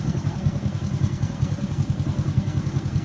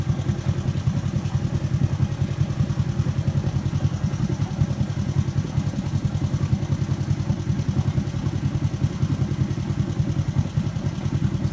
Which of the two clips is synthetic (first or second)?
first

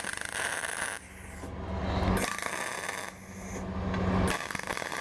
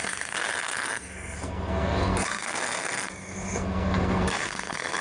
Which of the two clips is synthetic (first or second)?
second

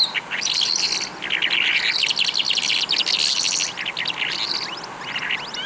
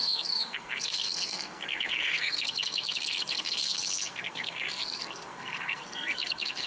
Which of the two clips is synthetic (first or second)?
second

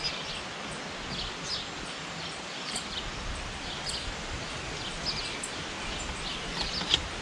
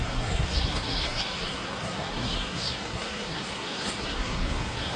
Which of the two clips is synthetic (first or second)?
second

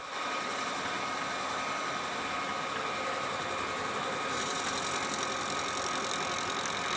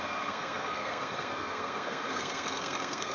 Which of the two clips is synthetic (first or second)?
second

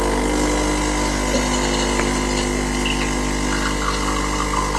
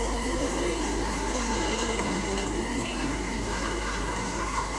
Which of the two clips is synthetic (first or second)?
second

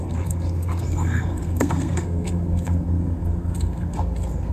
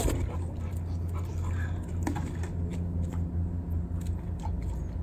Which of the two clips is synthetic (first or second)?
first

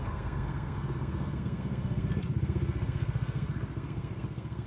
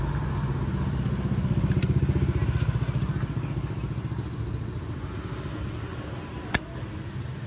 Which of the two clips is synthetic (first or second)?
first